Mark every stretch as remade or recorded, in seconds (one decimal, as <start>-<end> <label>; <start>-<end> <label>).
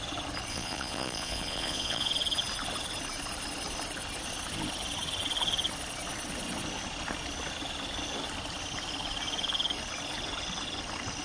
0.0-0.5 recorded; 0.5-2.1 remade; 2.1-11.2 recorded